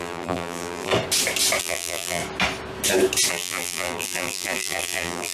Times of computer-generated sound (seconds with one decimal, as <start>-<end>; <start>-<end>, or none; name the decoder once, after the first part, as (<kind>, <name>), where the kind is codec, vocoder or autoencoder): 0.0-0.9 (vocoder, BigVGAN v2); 1.6-2.2; 3.3-5.3